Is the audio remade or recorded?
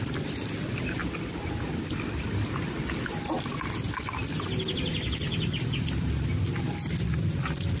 recorded